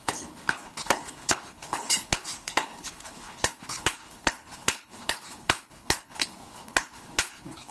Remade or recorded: remade